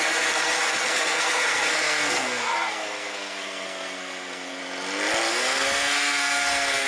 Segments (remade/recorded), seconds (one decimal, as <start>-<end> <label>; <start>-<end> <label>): 0.0-4.6 remade; 4.6-5.3 recorded; 5.3-6.9 remade